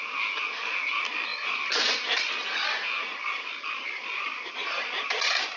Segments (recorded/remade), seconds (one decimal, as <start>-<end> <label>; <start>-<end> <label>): 0.0-5.6 recorded